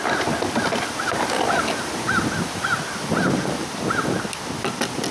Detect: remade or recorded recorded